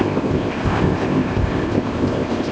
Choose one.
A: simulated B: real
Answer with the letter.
A